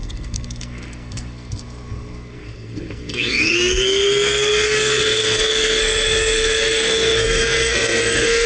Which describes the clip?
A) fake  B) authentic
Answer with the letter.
A